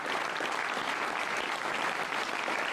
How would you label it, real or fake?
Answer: real